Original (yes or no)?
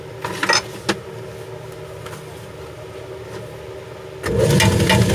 yes